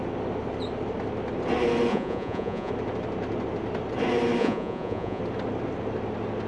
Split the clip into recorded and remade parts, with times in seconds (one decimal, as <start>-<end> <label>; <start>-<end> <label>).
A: 0.0-1.9 recorded; 1.9-2.7 remade; 2.7-4.4 recorded; 4.4-5.2 remade; 5.2-6.5 recorded